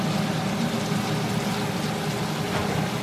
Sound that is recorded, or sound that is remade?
recorded